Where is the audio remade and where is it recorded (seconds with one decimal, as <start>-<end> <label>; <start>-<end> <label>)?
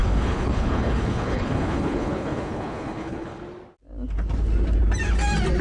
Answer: 0.0-3.4 remade; 3.4-5.6 recorded